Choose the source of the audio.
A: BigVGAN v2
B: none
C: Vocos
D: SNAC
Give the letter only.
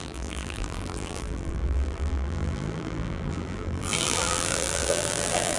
A